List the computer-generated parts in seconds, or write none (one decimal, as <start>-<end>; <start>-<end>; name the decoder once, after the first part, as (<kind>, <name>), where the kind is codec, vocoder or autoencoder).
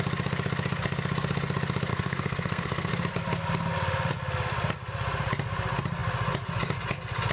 1.9-2.9 (codec, SNAC)